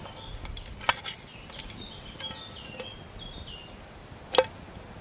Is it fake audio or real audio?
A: real